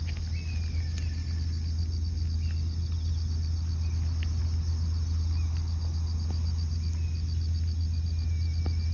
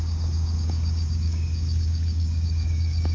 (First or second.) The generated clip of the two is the second